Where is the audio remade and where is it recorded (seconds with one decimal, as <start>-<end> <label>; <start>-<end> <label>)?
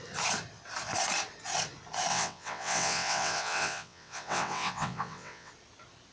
0.0-2.1 recorded; 2.1-5.5 remade; 5.5-6.1 recorded